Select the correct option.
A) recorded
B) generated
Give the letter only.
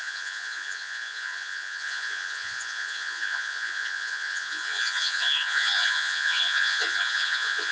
B